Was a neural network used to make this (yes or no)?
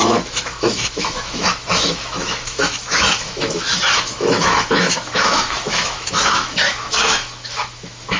yes